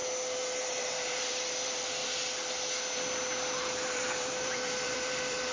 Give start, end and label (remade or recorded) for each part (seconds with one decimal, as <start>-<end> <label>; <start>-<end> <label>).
0.0-0.6 recorded; 0.6-2.0 remade; 2.0-3.6 recorded; 3.6-5.5 remade